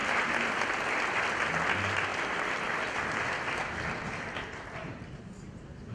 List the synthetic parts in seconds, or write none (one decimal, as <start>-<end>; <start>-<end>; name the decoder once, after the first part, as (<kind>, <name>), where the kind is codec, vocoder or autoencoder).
4.8-5.9 (vocoder, BigVGAN v2)